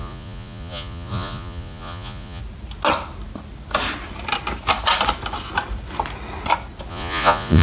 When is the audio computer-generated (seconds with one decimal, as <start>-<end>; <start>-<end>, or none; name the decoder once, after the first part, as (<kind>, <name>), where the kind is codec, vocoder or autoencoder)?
0.0-2.4 (vocoder, Vocos); 6.9-7.6